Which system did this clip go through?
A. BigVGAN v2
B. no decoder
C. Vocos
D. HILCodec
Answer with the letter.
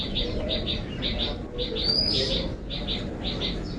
B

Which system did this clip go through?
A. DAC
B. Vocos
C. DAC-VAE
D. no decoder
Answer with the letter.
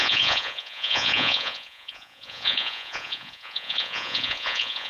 B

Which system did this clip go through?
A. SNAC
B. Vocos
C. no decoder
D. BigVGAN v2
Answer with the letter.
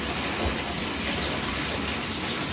C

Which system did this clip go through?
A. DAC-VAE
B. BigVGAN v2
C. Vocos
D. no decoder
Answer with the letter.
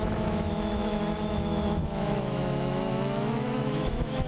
A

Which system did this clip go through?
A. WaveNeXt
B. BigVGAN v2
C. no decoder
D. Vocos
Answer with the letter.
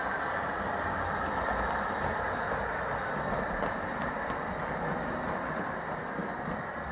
C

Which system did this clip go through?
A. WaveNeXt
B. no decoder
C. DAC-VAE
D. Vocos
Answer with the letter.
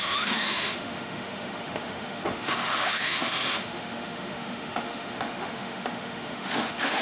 C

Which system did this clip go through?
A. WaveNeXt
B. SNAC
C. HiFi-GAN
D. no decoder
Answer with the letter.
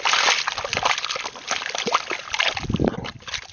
D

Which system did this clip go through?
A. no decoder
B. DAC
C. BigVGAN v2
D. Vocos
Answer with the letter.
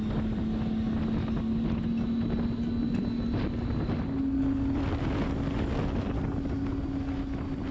A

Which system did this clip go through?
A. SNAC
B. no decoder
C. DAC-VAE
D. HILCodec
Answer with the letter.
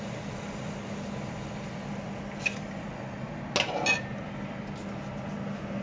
B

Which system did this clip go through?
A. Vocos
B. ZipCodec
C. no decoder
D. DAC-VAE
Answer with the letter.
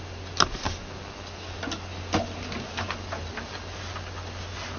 C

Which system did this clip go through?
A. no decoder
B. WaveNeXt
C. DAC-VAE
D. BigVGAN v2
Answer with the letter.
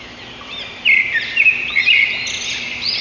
A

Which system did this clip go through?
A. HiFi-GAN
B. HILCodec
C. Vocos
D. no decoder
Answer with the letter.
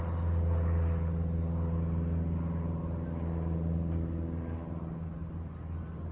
D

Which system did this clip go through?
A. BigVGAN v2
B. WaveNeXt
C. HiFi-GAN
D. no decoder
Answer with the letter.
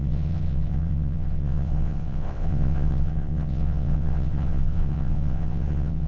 B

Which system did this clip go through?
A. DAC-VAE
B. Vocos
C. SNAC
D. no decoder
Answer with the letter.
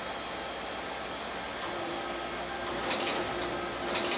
D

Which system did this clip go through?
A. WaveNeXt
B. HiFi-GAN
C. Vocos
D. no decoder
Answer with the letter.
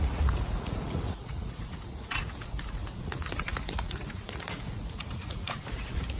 C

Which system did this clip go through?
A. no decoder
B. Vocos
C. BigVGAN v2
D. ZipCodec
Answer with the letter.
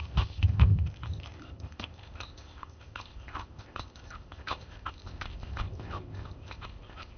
D